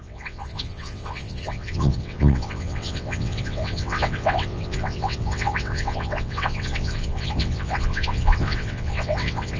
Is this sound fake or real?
fake